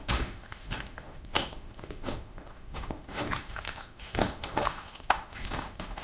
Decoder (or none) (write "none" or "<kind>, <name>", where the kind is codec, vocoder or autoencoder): autoencoder, DAC-VAE